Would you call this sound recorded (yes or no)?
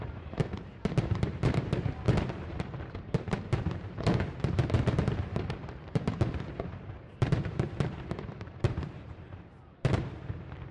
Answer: no